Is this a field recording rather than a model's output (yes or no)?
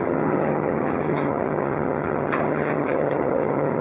no